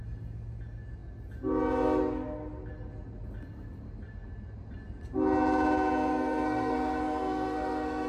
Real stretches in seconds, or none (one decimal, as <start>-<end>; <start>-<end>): 0.0-6.1